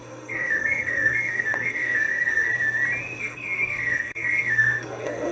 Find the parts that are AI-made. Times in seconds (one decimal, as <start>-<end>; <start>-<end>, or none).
0.0-2.5; 3.2-5.3